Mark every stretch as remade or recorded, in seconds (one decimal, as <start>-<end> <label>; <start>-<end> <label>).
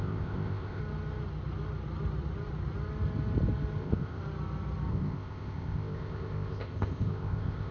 0.0-0.8 remade; 0.8-3.8 recorded; 3.8-4.2 remade; 4.2-4.9 recorded; 4.9-7.7 remade